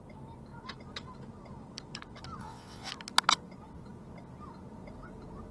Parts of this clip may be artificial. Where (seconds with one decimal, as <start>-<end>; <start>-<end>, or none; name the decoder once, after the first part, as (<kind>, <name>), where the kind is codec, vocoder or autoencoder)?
2.4-2.9 (vocoder, WaveNeXt)